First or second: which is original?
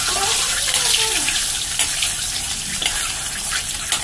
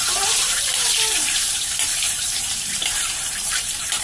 first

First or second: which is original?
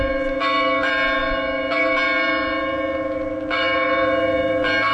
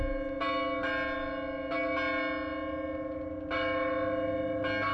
second